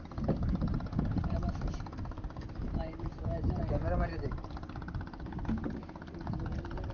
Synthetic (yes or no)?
no